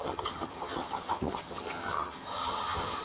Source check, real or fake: fake